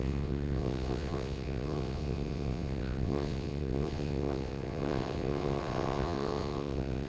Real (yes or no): no